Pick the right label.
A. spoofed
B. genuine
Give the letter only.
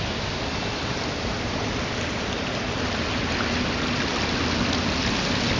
B